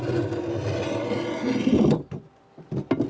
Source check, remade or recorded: recorded